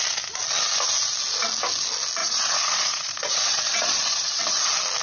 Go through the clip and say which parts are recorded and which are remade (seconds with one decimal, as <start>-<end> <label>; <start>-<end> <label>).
0.0-2.2 recorded; 2.2-4.4 remade; 4.4-5.0 recorded